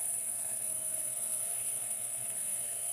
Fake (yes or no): yes